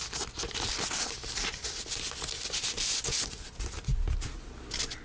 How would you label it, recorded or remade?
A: recorded